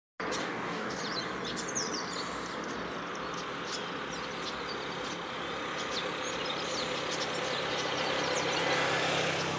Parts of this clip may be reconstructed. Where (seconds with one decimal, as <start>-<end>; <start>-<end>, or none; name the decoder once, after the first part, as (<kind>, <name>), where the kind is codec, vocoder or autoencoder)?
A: 0.4-1.0 (codec, DAC)